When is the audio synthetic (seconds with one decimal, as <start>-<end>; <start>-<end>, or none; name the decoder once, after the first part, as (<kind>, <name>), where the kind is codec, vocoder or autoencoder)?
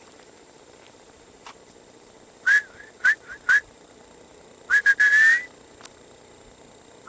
none